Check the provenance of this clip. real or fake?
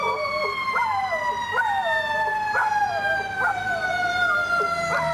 fake